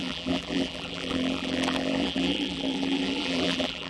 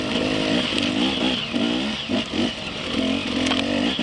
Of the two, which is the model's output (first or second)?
first